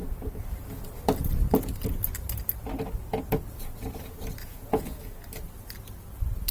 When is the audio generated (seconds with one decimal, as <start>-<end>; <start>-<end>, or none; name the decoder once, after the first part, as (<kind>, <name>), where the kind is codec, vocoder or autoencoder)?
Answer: 4.4-5.1 (vocoder, Vocos)